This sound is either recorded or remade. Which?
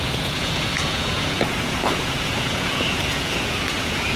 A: remade